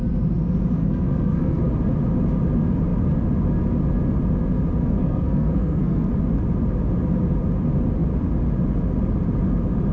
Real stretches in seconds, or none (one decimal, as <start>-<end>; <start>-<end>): 0.0-0.8; 1.7-4.8; 6.1-9.9